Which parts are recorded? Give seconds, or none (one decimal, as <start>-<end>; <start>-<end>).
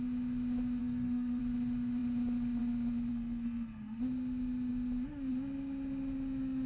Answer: 0.0-0.8; 1.4-3.1; 4.0-6.7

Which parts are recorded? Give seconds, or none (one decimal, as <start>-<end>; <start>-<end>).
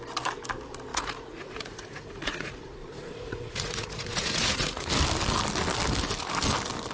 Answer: 0.0-0.9; 4.9-6.9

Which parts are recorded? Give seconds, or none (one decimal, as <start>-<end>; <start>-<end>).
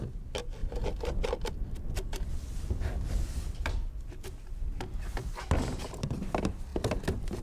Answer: 0.0-7.4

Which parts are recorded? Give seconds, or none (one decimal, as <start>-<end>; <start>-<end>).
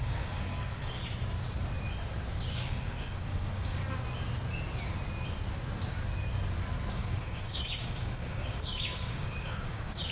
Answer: 1.0-2.5; 3.8-6.9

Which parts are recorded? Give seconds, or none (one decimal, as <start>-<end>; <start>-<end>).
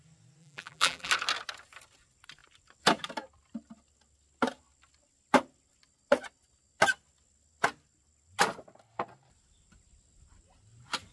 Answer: 0.0-0.4; 1.1-11.1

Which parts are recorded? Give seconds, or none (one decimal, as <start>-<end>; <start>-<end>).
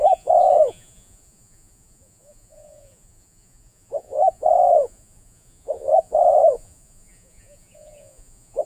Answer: none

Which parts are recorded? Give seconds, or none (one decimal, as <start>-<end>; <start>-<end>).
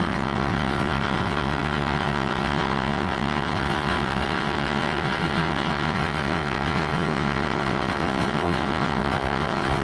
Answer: none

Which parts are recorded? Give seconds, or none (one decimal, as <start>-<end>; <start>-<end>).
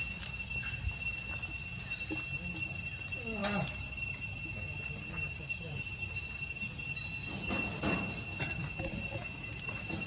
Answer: 0.0-10.1